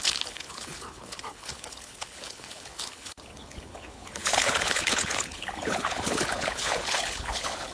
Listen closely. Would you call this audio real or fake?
fake